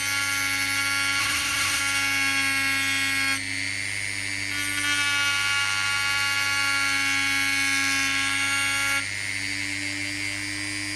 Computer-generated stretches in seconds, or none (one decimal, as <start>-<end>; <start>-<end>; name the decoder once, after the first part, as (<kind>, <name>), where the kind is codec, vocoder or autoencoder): 1.2-1.8 (codec, SNAC)